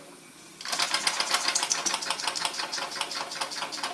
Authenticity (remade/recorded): recorded